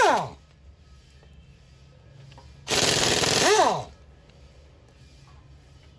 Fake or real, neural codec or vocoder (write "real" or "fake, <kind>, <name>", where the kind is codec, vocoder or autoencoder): real